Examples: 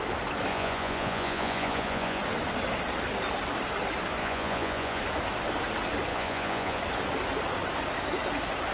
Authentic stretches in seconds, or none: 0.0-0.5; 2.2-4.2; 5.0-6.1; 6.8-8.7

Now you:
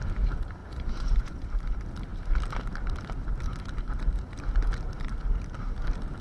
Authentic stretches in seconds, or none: 0.0-0.6; 1.5-6.2

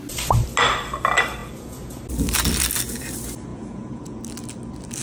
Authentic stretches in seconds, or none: 0.0-1.4; 2.0-3.5; 4.2-5.0

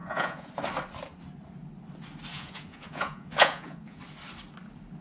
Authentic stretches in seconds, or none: 0.5-2.3; 4.0-5.0

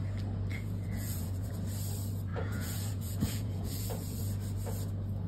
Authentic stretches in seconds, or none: 0.0-0.5; 1.5-2.3; 4.2-5.3